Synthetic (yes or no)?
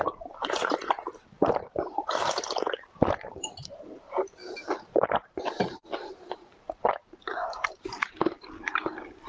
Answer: yes